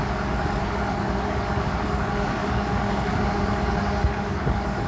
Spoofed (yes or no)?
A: yes